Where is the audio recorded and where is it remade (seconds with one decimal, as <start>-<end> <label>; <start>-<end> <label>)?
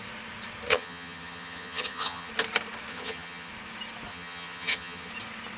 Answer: 0.0-0.7 recorded; 0.7-2.3 remade; 2.3-2.9 recorded; 2.9-3.5 remade; 3.5-4.1 recorded; 4.1-5.1 remade; 5.1-5.6 recorded